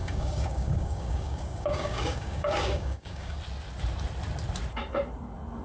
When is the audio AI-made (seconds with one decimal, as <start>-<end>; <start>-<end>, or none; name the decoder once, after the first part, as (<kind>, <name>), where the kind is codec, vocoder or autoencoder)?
0.0-3.4 (codec, DAC)